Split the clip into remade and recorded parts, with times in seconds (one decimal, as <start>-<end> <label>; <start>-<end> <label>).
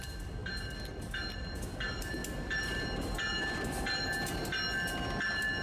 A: 0.0-2.2 recorded; 2.2-4.3 remade; 4.3-5.6 recorded